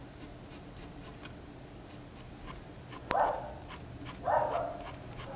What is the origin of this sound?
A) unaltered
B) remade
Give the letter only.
A